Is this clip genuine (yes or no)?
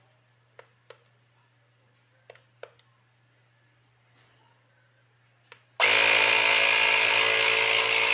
yes